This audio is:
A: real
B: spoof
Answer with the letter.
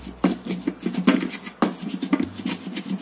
A